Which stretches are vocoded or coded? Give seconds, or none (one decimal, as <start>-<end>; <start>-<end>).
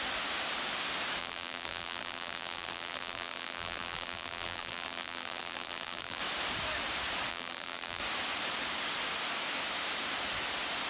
1.2-6.2; 7.3-8.0